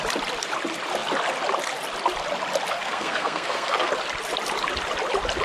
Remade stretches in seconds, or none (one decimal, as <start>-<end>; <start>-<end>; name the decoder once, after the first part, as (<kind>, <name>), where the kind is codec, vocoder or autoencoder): 2.7-3.9 (codec, SNAC)